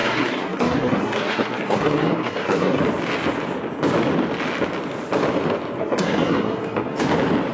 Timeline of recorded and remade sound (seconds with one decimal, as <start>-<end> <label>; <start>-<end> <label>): 0.0-2.8 remade; 2.8-5.8 recorded; 5.8-7.0 remade; 7.0-7.5 recorded